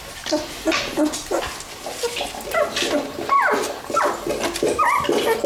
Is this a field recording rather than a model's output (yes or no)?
yes